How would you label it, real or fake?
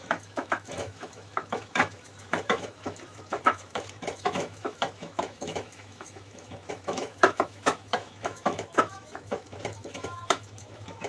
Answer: fake